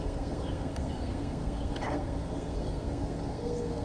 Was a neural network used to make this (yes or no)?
yes